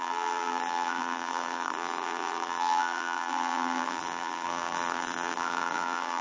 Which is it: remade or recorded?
remade